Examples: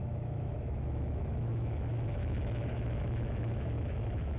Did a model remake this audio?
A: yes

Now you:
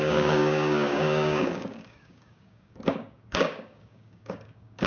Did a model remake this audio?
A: yes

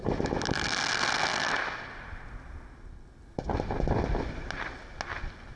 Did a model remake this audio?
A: no